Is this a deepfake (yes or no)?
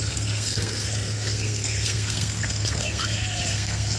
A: yes